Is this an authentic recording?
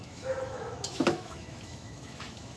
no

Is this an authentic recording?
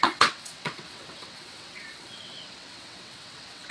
no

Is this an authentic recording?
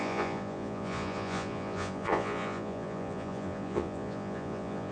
no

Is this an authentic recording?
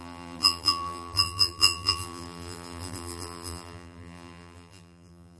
no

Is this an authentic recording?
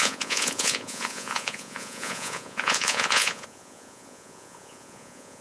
no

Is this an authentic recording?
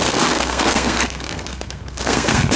no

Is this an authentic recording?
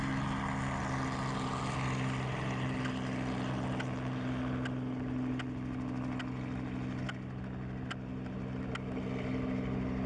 yes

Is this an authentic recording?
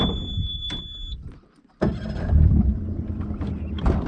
no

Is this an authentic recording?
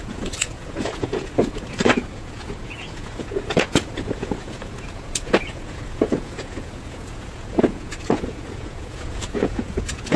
no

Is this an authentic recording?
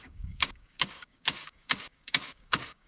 no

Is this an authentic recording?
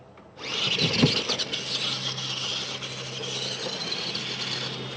yes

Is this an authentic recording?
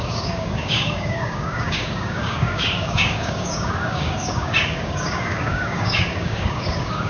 no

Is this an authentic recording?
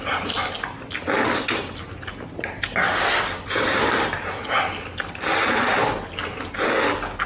yes